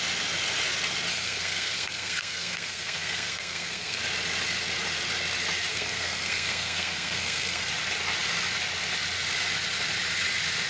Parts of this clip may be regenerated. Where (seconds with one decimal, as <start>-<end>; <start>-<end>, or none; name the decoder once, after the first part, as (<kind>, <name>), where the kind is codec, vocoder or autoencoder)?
1.1-4.0 (codec, SNAC); 5.7-7.7